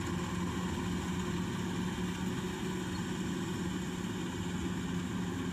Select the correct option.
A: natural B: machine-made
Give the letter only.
A